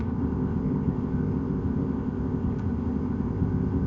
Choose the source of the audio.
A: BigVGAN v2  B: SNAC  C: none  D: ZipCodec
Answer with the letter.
D